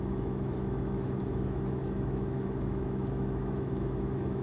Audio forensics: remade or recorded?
remade